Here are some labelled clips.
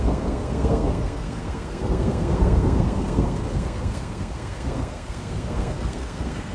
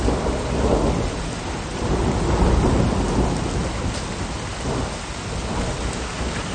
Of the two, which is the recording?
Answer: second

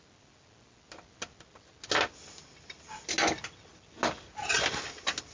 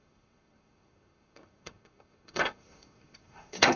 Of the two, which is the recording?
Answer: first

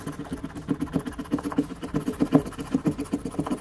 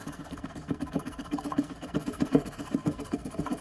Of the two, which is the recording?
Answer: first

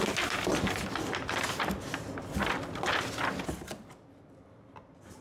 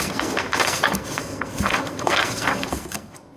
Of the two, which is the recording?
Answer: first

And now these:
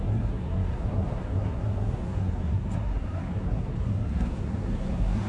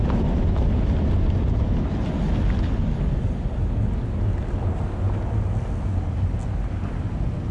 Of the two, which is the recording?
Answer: second